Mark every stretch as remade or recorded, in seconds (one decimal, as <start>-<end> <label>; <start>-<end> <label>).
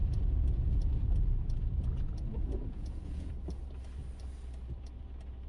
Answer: 0.0-3.3 remade; 3.3-5.5 recorded